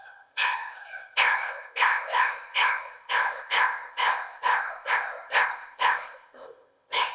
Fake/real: fake